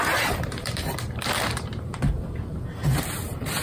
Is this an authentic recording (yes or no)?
no